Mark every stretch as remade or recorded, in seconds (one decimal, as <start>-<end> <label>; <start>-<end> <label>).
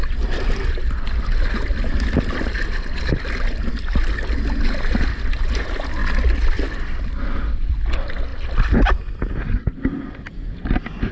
0.0-3.7 remade; 3.7-6.0 recorded; 6.0-7.2 remade; 7.2-11.1 recorded